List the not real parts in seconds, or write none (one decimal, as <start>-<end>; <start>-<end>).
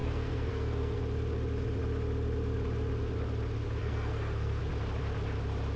0.0-1.0; 3.8-4.6